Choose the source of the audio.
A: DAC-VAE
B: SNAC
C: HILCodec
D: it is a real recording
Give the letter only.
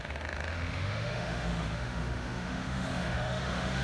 A